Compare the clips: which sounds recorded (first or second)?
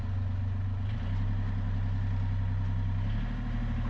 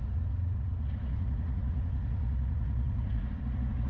first